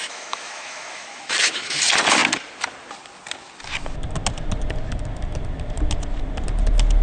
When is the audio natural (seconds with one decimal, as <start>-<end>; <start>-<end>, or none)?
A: 1.8-7.0